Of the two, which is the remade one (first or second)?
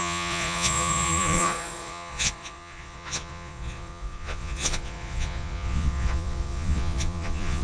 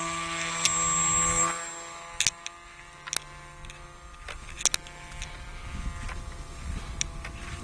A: first